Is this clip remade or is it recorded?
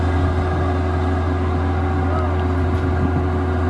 recorded